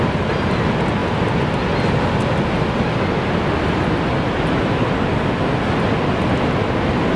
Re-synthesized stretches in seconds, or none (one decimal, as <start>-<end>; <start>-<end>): none